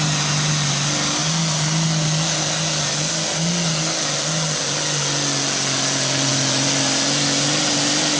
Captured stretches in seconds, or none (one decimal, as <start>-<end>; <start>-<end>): 0.0-8.2